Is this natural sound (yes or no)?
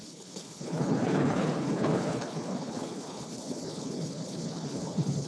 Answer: no